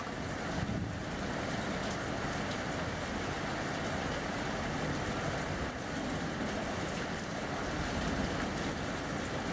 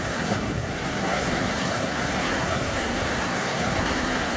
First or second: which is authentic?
first